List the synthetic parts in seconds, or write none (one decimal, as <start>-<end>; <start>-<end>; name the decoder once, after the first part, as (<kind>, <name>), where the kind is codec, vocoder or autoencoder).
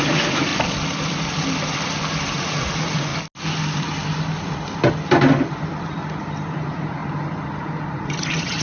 0.0-0.5 (vocoder, Vocos); 2.4-3.1; 6.5-7.0; 7.6-8.6